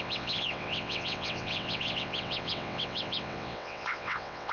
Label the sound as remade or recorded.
remade